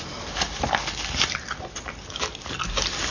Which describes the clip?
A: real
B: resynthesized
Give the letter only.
A